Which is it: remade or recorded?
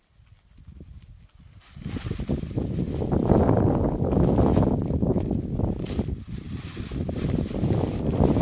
recorded